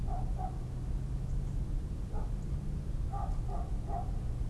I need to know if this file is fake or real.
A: real